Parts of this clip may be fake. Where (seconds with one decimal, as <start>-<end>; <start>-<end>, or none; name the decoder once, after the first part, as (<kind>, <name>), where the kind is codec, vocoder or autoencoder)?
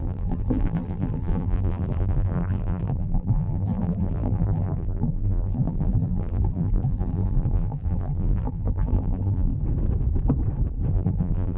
0.0-9.5 (vocoder, BigVGAN v2); 10.9-11.6